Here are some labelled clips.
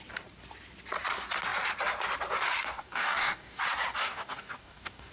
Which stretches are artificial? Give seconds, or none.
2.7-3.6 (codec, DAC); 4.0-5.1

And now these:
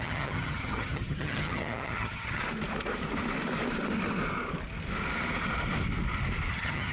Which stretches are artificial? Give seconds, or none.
0.0-2.4 (vocoder, HiFi-GAN); 6.5-6.9

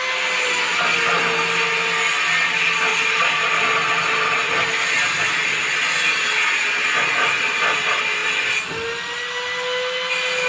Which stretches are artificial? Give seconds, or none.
2.9-4.5 (vocoder, BigVGAN v2)

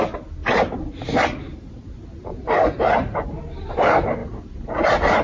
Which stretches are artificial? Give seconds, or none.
none